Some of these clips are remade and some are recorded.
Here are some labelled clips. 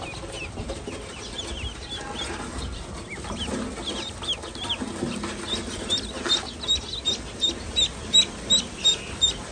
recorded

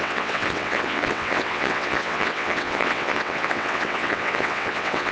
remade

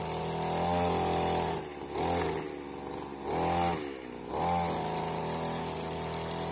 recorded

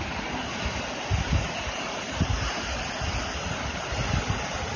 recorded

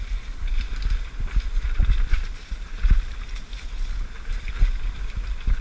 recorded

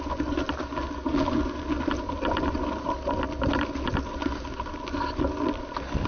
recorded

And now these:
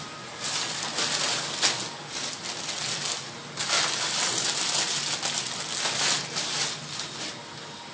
recorded